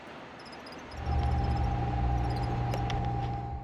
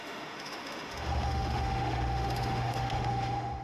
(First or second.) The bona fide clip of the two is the first